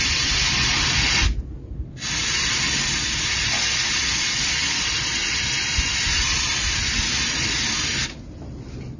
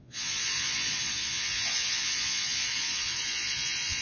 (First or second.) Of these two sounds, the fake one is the second